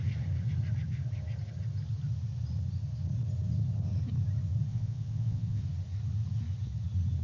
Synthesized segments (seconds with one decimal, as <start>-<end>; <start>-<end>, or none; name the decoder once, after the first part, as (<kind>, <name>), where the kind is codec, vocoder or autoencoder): 4.7-5.6 (vocoder, WaveNeXt)